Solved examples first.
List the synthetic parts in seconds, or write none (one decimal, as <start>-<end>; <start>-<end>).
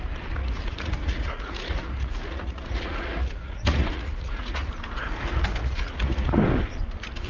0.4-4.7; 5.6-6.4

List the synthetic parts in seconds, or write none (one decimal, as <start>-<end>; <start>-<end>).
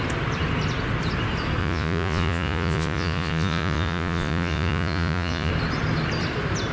1.6-5.5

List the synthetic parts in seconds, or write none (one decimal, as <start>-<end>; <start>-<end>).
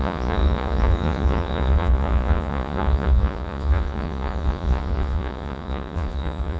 0.0-6.6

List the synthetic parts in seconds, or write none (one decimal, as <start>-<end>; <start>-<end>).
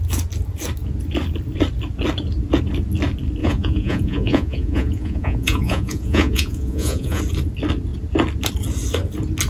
3.4-7.2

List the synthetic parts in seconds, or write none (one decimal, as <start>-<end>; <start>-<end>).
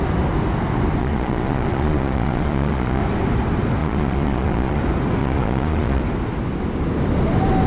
1.0-3.0; 3.8-4.8; 5.2-6.0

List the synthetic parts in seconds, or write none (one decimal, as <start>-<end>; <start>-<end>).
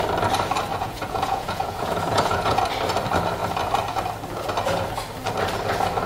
0.7-2.6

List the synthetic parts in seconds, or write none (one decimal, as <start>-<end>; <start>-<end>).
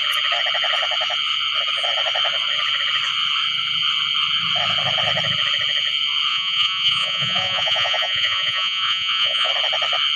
6.3-9.5